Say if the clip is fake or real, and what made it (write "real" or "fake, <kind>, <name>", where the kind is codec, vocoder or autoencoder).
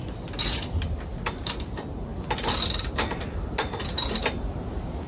real